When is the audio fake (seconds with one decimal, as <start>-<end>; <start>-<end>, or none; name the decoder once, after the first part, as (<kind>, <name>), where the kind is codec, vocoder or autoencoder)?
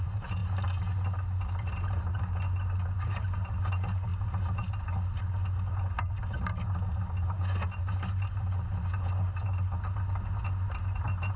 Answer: none